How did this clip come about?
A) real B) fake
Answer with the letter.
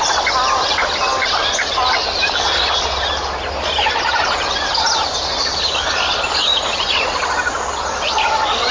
A